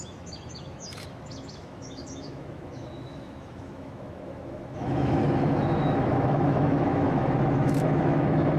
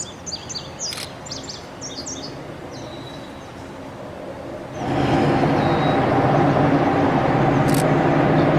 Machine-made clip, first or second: first